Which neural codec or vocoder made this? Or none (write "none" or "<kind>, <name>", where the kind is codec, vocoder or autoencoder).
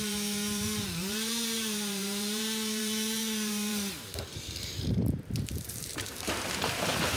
vocoder, BigVGAN v2